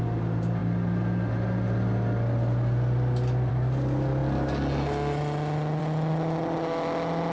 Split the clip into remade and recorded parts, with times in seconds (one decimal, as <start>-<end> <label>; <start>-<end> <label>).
0.0-7.3 recorded